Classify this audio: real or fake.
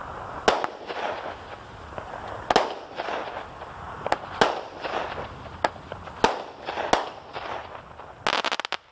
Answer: real